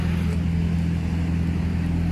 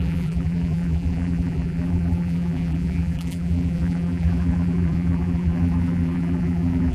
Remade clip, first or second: second